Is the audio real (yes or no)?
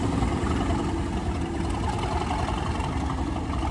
yes